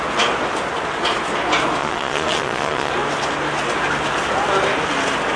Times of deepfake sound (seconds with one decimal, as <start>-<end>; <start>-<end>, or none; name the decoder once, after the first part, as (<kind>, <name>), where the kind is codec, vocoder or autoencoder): 1.8-2.9 (vocoder, Vocos)